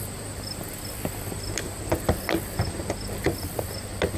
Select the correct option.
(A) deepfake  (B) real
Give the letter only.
A